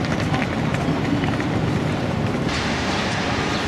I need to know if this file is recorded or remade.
remade